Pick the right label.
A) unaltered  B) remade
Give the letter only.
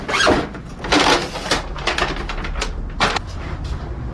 A